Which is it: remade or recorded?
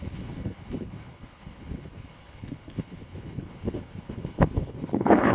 remade